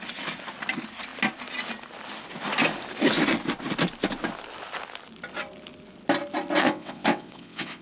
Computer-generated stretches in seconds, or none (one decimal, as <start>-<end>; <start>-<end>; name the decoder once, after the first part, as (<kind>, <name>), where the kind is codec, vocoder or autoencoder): 6.6-7.8 (vocoder, WaveNeXt)